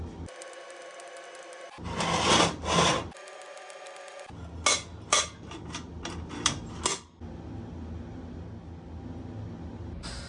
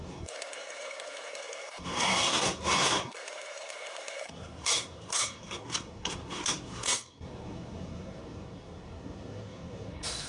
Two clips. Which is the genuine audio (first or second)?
first